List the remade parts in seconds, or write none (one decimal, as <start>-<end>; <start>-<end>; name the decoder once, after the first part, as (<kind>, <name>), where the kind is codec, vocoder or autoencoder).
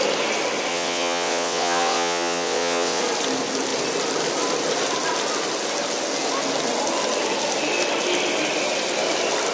0.7-3.0 (vocoder, WaveNeXt)